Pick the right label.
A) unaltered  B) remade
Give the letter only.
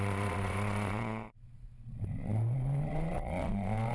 B